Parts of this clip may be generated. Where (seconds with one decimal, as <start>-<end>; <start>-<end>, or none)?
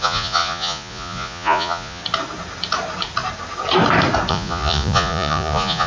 0.0-2.0; 4.3-5.9